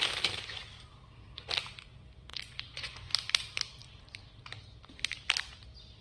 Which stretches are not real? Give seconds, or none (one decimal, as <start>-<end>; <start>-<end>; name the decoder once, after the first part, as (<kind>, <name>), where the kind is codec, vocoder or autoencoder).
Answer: 2.3-3.1 (vocoder, Vocos)